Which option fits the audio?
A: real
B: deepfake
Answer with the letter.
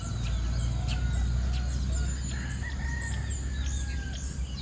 A